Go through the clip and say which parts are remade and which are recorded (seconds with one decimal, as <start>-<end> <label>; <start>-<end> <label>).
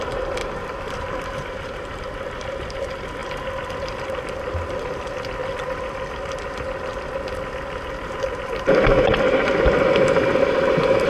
0.0-0.4 recorded; 0.4-2.0 remade; 2.0-11.1 recorded